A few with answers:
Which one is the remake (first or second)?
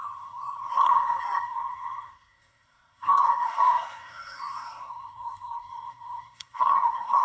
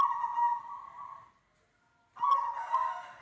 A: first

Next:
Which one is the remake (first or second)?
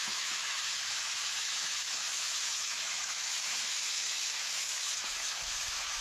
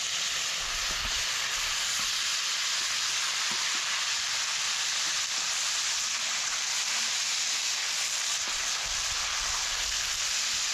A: first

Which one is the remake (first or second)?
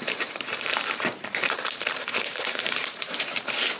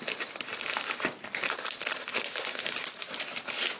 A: first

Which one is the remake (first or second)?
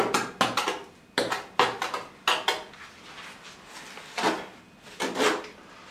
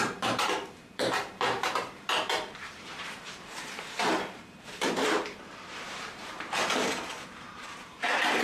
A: second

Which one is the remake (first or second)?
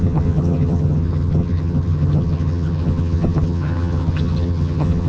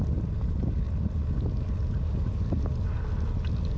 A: first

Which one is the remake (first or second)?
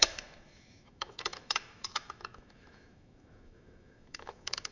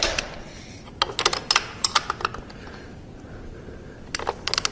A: first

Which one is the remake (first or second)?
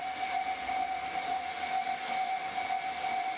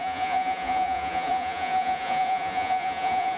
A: second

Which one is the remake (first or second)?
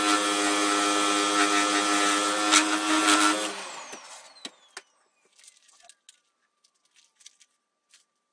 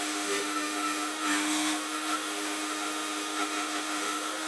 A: second